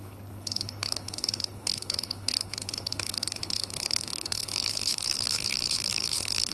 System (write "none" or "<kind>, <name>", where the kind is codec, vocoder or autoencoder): codec, HILCodec